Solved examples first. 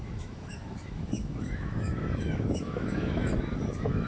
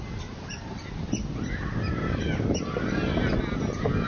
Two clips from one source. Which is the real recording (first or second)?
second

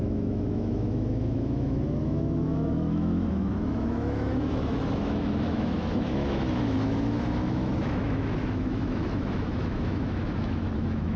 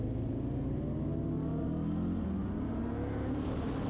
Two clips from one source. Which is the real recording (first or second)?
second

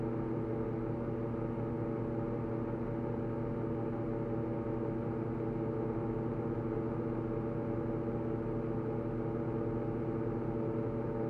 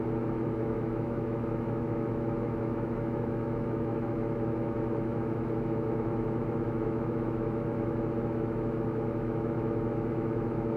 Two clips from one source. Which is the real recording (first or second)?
first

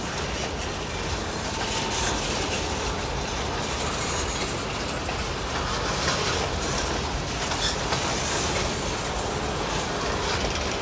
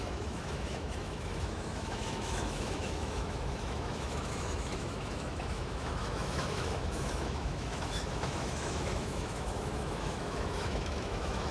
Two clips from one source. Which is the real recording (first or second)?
first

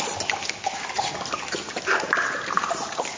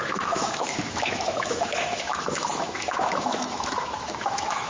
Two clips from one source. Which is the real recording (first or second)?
first